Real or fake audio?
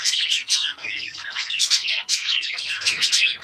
fake